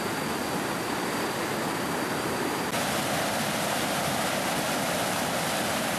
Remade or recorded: recorded